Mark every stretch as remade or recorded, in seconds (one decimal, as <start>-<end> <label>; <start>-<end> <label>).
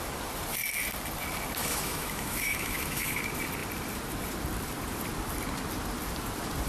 0.0-1.6 recorded; 1.6-3.2 remade; 3.2-6.7 recorded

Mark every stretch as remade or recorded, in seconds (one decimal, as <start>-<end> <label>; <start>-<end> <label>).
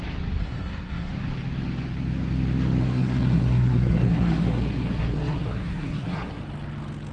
0.0-0.4 recorded; 0.4-1.1 remade; 1.1-2.8 recorded; 2.8-6.4 remade; 6.4-7.1 recorded